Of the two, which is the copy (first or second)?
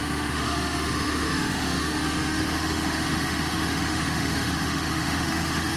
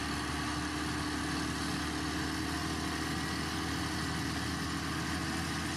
first